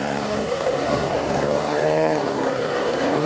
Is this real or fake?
fake